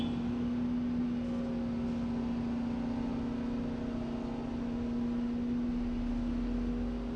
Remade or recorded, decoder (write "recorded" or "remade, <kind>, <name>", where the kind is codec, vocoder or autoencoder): recorded